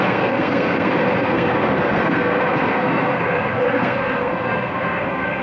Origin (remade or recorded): remade